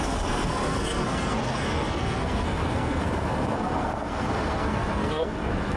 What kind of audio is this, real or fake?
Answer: fake